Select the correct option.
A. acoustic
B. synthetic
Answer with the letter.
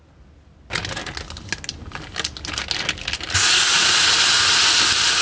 A